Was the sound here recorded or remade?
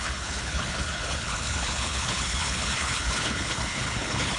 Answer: remade